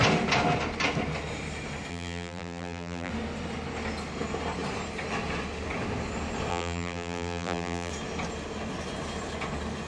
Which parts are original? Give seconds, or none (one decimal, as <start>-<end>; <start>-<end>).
0.0-1.9; 3.1-6.5; 7.9-9.9